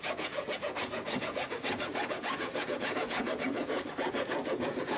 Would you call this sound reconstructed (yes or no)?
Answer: yes